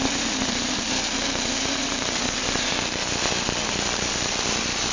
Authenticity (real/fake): fake